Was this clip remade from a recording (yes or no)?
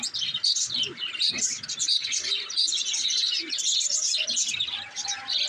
no